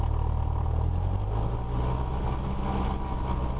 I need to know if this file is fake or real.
real